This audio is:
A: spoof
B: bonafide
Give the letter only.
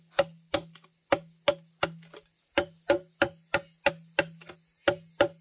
B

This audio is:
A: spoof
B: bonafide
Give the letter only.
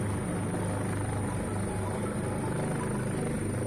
B